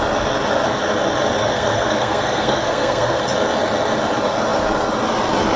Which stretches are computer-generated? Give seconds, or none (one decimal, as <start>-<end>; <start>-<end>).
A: 1.4-3.2